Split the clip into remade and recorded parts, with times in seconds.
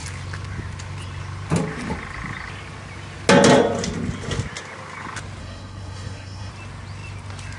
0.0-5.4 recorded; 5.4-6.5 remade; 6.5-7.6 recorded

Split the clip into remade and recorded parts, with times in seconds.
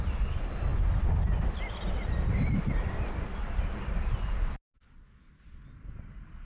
0.0-6.5 recorded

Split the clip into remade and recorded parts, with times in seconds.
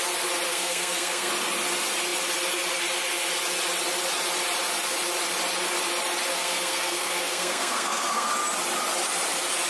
0.0-0.5 recorded; 0.5-1.3 remade; 1.3-6.3 recorded; 6.3-8.3 remade; 8.3-9.7 recorded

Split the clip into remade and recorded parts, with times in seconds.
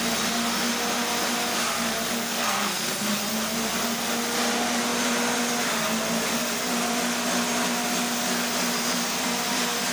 0.0-2.1 recorded; 2.1-2.9 remade; 2.9-9.9 recorded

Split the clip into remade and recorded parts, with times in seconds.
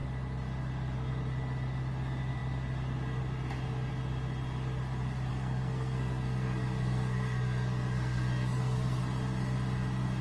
0.0-5.3 recorded; 5.3-9.0 remade; 9.0-10.2 recorded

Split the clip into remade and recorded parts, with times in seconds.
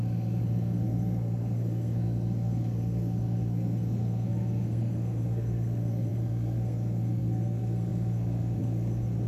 0.0-9.3 remade